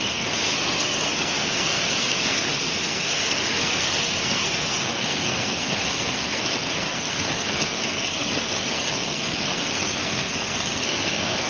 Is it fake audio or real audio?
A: fake